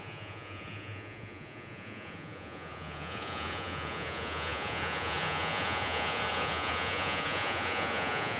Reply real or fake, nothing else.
fake